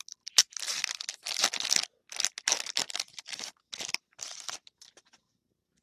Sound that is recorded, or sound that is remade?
recorded